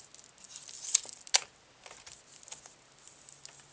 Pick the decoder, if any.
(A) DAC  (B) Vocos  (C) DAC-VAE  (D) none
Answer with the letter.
D